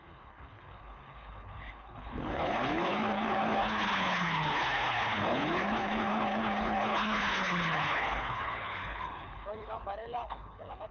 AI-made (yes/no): yes